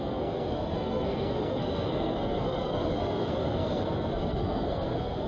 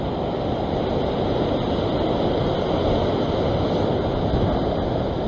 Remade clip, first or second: first